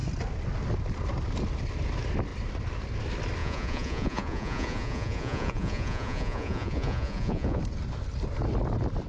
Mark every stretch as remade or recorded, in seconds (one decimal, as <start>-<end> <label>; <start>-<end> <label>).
0.0-3.4 recorded; 3.4-7.6 remade; 7.6-9.1 recorded